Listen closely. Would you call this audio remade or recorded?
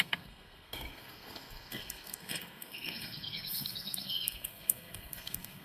remade